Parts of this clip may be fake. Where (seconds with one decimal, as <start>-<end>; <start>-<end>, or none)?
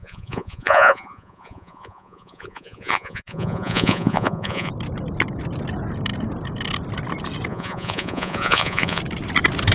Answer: 0.0-4.7; 7.5-9.0